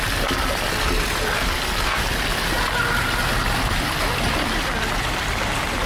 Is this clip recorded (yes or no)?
yes